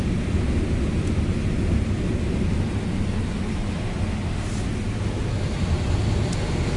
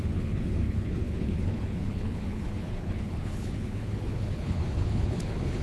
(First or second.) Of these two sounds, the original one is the first